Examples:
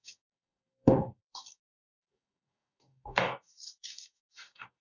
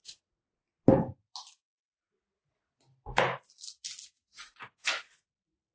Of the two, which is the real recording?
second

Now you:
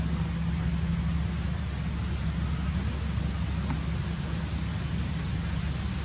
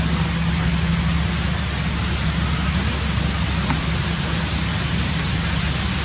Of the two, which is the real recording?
first